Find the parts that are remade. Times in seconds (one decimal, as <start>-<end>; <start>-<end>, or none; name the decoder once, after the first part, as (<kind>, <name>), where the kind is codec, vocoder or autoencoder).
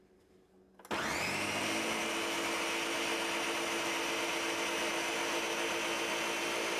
1.1-2.0 (vocoder, BigVGAN v2)